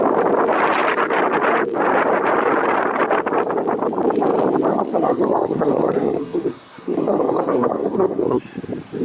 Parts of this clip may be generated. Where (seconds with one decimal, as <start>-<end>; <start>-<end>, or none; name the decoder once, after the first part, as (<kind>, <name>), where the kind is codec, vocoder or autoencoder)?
4.7-8.4 (codec, SNAC)